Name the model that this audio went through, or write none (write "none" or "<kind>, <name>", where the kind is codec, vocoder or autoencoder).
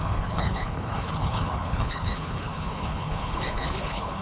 codec, HILCodec